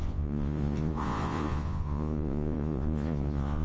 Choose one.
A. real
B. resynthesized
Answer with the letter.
B